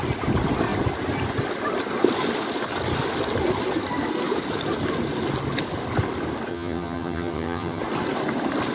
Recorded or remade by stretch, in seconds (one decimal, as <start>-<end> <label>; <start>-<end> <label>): 0.0-6.5 recorded; 6.5-7.8 remade; 7.8-8.7 recorded